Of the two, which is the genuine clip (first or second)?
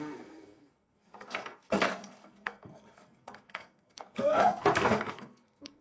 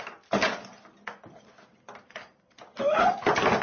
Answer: second